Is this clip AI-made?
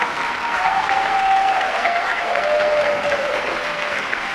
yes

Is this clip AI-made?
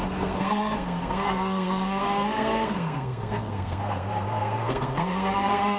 yes